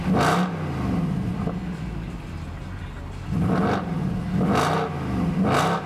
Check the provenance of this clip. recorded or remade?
recorded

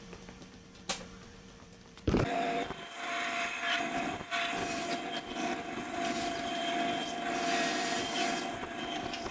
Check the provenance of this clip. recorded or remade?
remade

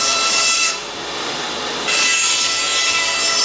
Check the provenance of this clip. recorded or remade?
remade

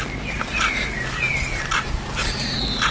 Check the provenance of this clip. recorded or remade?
remade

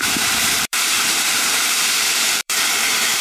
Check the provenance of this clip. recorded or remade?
remade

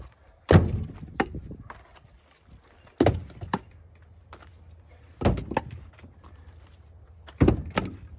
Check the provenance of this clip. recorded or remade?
recorded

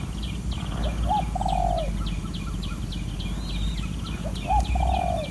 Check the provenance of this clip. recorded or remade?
recorded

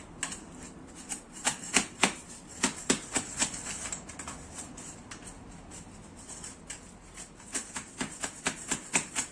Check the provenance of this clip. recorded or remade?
recorded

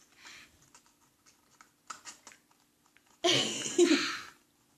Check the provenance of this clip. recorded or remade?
recorded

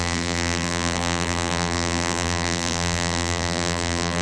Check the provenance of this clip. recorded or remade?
remade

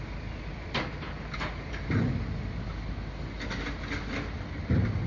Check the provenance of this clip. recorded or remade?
recorded